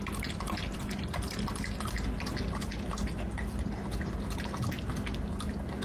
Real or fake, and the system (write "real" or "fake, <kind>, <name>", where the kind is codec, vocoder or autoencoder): real